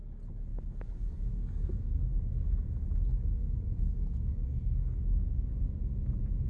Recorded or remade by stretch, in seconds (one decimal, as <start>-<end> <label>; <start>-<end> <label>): 0.0-0.5 recorded; 0.5-2.0 remade; 2.0-3.1 recorded; 3.1-5.5 remade; 5.5-6.5 recorded